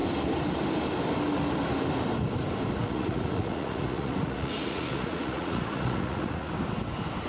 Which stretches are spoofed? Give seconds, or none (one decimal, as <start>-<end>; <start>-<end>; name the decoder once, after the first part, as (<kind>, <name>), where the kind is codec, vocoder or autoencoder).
2.8-6.5 (vocoder, Vocos)